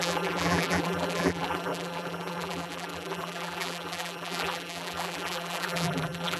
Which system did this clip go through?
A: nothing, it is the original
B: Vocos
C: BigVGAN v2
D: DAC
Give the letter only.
C